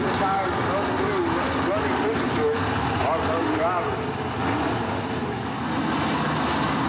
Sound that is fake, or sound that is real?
real